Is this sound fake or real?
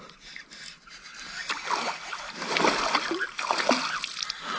real